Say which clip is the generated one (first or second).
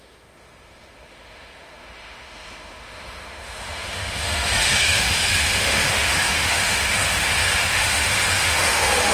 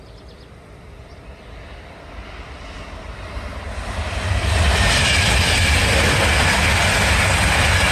first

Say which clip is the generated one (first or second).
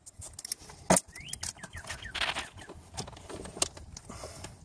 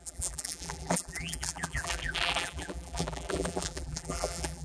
second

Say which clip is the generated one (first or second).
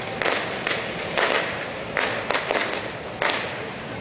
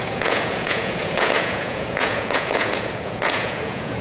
second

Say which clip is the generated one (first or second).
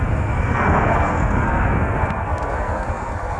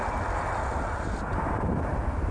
first